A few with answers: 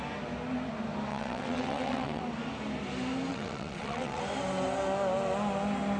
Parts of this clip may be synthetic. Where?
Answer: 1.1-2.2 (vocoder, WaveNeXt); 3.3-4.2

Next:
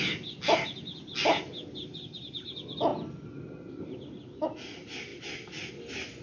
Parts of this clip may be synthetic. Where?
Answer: none

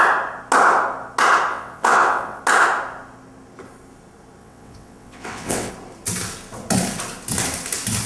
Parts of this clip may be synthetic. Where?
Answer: 1.5-2.4 (vocoder, WaveNeXt); 4.4-5.7

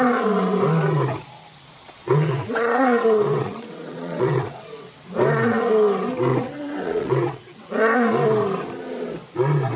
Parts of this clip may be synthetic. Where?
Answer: 1.8-4.9 (vocoder, WaveNeXt); 6.3-7.7